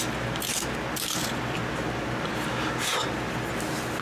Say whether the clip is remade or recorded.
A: recorded